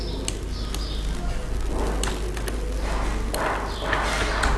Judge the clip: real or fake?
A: real